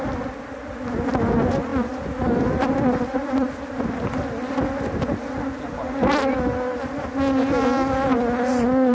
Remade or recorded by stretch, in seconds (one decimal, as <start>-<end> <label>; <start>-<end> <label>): 0.0-8.9 recorded